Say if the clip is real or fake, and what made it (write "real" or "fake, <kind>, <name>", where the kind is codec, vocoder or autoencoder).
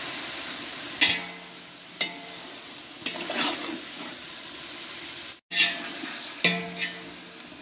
real